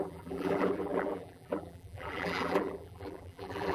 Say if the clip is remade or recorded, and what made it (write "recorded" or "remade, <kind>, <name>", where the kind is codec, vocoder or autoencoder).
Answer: remade, vocoder, BigVGAN v2